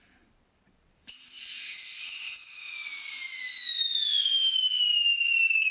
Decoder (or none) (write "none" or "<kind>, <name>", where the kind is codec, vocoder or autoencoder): none